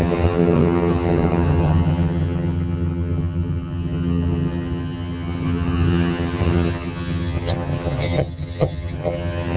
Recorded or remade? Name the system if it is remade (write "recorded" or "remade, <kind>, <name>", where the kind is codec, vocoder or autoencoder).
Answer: remade, vocoder, HiFi-GAN